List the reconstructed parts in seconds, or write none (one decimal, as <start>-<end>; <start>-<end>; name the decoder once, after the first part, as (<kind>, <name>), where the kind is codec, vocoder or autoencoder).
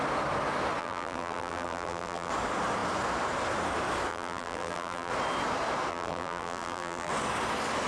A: 0.8-2.3 (vocoder, BigVGAN v2); 4.1-5.1; 5.9-7.1